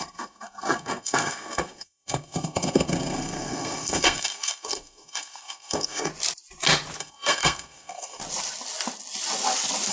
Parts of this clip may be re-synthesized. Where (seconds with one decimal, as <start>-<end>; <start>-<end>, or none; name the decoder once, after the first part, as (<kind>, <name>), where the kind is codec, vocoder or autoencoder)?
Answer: 0.0-6.1 (codec, SNAC); 7.0-8.2